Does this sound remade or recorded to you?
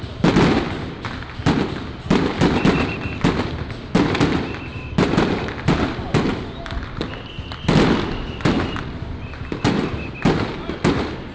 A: recorded